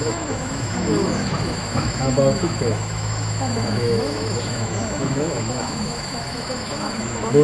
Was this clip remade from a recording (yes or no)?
yes